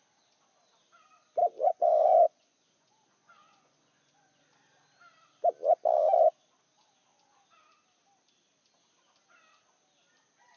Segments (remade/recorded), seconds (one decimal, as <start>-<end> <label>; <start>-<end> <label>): 0.0-1.4 recorded; 1.4-4.4 remade; 4.4-10.6 recorded